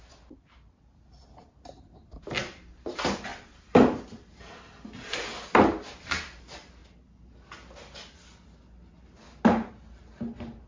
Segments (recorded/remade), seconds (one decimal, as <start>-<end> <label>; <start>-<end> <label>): 0.0-10.7 recorded